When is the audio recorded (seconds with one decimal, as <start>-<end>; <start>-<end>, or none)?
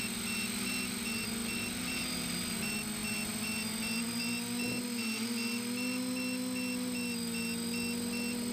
0.0-8.5